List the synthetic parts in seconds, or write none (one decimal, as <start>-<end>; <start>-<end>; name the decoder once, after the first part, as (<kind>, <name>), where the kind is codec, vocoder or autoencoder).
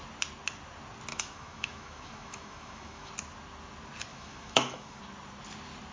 1.1-3.1 (autoencoder, DAC-VAE); 4.1-5.0